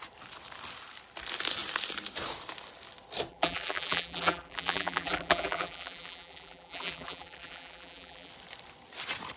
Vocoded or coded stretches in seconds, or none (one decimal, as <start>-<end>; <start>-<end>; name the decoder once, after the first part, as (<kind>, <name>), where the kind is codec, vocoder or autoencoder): 3.3-8.3 (vocoder, BigVGAN v2)

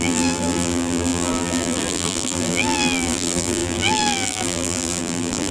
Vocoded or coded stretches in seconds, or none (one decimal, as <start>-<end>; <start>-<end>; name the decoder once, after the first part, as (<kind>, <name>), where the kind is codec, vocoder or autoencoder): 0.0-5.5 (vocoder, BigVGAN v2)

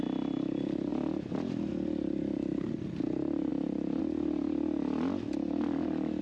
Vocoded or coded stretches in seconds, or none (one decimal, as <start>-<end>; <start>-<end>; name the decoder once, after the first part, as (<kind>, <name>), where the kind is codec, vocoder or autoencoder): 0.9-1.7 (vocoder, BigVGAN v2); 3.5-4.0

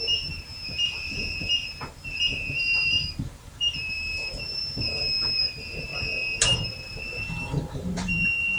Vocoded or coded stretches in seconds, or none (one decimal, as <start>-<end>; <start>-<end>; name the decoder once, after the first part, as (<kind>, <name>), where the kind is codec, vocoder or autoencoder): 0.0-5.9 (vocoder, BigVGAN v2); 6.7-8.6